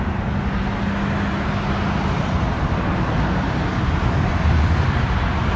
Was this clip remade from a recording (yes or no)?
no